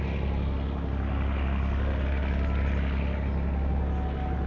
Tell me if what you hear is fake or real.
real